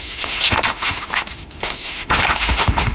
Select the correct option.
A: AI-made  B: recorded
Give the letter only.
A